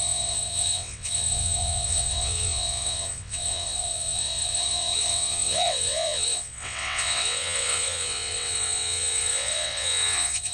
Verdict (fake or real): fake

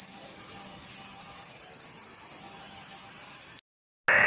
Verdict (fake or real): real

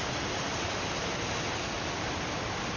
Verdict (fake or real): real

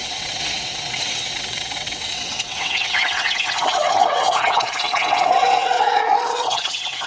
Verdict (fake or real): fake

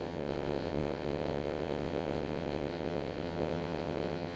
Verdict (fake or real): fake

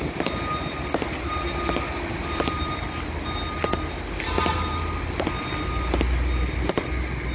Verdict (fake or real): real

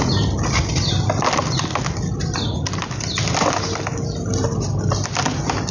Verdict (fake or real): real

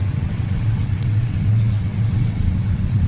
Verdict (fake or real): fake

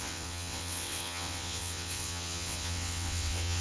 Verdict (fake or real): fake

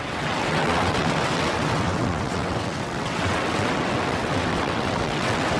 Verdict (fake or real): fake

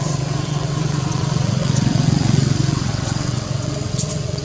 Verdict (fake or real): fake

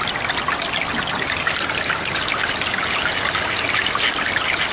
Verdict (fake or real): real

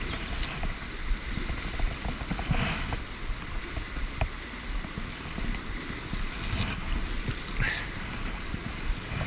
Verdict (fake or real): real